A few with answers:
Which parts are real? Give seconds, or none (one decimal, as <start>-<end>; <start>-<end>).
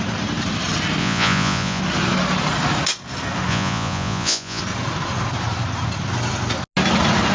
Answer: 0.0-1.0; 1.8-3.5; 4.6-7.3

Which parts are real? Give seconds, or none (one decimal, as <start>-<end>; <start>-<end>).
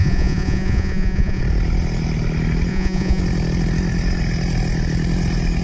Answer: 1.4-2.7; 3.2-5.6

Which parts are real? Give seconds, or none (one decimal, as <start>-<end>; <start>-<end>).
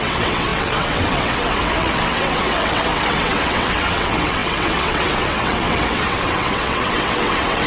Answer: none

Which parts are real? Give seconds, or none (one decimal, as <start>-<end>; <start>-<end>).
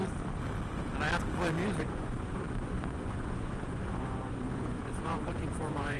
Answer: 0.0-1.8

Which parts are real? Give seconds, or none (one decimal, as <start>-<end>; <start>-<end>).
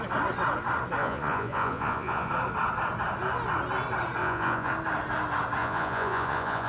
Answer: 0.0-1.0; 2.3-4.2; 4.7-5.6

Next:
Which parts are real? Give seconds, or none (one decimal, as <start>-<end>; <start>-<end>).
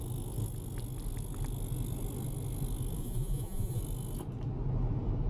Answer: 0.0-3.0; 3.8-5.3